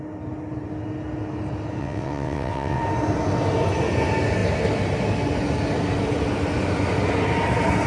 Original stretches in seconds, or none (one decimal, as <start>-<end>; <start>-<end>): 0.0-1.8; 2.8-7.9